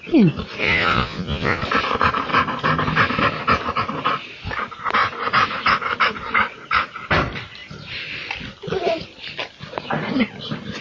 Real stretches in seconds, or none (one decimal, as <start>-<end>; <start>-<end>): 0.0-0.6; 1.6-10.8